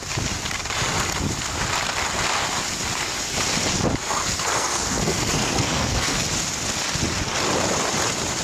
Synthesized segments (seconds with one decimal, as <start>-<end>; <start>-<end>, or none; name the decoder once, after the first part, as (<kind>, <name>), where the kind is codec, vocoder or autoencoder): 4.0-6.2 (codec, SNAC)